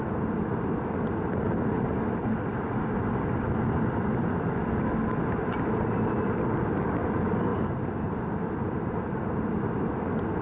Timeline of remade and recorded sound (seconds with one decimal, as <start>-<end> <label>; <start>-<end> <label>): 0.0-10.4 recorded